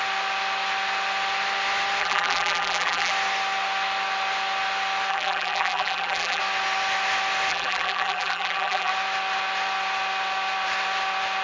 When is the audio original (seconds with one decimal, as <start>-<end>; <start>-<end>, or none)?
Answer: 0.0-2.0; 3.1-5.1; 6.4-7.5; 8.9-11.4